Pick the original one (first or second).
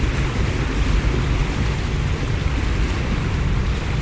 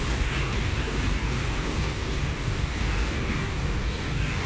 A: first